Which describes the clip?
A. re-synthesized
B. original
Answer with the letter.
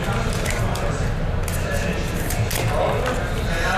B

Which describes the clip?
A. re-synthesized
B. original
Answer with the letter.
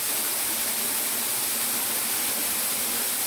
B